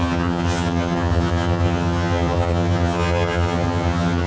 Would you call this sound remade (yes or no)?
yes